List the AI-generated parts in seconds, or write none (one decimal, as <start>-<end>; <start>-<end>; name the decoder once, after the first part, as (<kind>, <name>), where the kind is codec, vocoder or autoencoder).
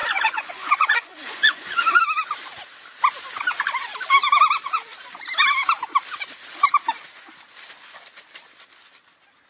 0.0-2.0 (vocoder, Vocos)